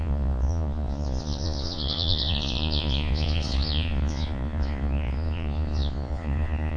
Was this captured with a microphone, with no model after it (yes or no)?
no